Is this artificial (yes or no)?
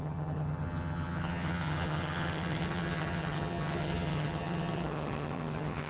yes